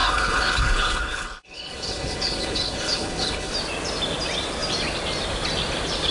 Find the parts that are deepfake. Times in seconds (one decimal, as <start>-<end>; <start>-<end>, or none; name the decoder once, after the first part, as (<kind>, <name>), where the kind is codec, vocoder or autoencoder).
0.0-3.5 (codec, HILCodec)